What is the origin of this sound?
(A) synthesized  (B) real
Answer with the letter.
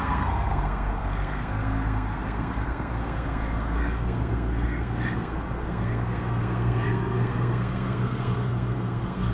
A